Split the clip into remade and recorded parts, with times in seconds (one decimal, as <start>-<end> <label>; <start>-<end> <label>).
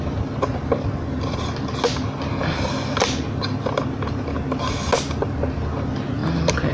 0.0-6.7 recorded